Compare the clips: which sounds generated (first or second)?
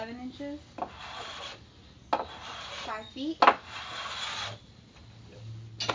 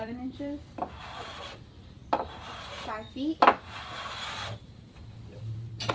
second